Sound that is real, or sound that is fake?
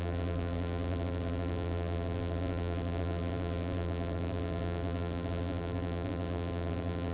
fake